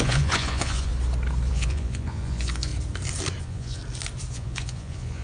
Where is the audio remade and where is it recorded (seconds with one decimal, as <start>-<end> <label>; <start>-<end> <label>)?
0.0-0.9 remade; 0.9-1.5 recorded; 1.5-2.7 remade; 2.7-3.4 recorded; 3.4-3.8 remade; 3.8-4.3 recorded; 4.3-5.2 remade

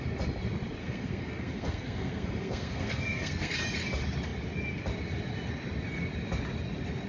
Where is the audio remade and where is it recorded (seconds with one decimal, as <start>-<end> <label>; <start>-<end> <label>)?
0.0-0.8 recorded; 0.8-3.5 remade; 3.5-7.1 recorded

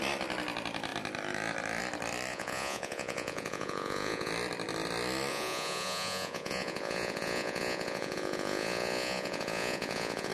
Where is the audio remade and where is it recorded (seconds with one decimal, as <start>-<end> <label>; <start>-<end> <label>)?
0.0-2.3 recorded; 2.3-4.3 remade; 4.3-5.3 recorded; 5.3-10.3 remade

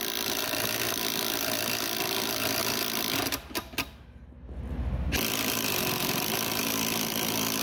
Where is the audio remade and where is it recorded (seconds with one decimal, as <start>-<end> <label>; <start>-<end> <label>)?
0.0-7.6 recorded